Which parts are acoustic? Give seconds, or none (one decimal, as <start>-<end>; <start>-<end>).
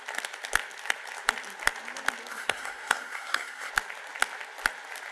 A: 0.0-2.3; 3.7-5.1